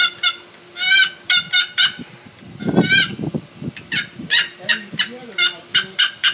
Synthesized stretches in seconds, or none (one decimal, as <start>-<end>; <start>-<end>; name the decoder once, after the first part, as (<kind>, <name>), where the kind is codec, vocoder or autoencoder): 0.0-6.3 (vocoder, BigVGAN v2)